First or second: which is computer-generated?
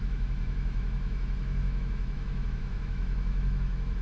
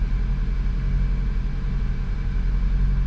first